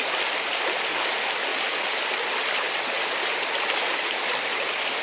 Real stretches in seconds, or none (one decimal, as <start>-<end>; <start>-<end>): 0.0-5.0